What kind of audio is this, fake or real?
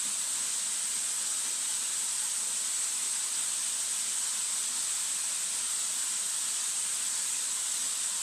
real